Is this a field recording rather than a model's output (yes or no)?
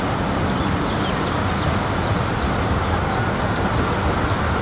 yes